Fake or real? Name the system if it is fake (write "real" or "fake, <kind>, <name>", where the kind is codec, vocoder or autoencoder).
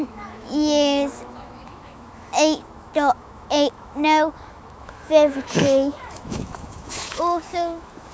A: fake, autoencoder, DAC-VAE